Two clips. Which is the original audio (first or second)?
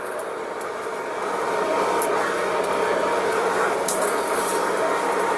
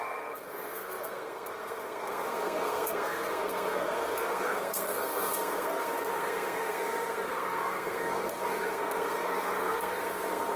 first